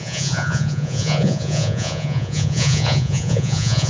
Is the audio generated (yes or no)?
yes